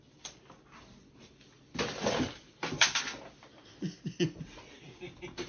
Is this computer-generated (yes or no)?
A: no